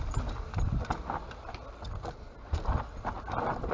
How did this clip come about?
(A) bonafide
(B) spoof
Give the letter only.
A